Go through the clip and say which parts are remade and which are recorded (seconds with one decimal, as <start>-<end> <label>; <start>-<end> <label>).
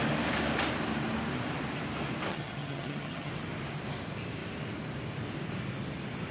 0.0-2.3 recorded; 2.3-3.3 remade; 3.3-6.3 recorded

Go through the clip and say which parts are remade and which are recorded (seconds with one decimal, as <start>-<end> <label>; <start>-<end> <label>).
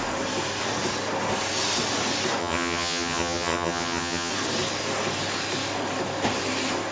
0.0-2.4 recorded; 2.4-4.3 remade; 4.3-6.9 recorded